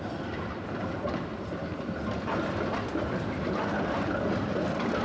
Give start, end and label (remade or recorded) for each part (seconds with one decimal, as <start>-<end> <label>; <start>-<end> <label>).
0.0-5.0 recorded